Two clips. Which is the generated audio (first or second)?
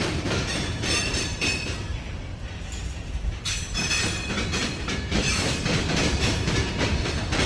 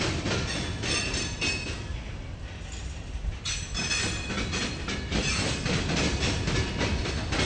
first